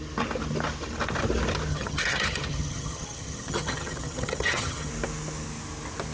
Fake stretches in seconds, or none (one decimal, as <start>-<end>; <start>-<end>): 1.7-4.9

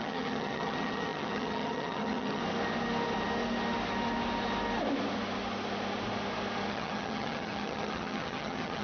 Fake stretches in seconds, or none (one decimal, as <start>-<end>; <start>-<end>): 0.0-2.4; 6.7-8.8

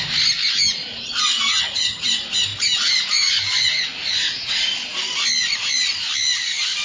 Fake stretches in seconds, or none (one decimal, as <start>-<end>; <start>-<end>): 1.5-2.1